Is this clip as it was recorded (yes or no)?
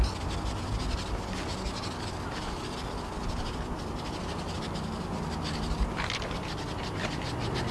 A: yes